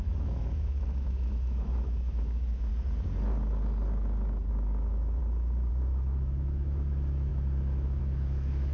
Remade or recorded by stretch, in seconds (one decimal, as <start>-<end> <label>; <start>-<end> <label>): 0.0-2.7 remade; 2.7-4.5 recorded; 4.5-5.2 remade; 5.2-5.7 recorded; 5.7-8.7 remade